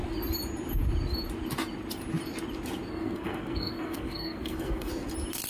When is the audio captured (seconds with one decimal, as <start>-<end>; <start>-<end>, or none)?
0.0-2.9; 4.9-5.5